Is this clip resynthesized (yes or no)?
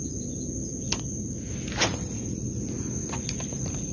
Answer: no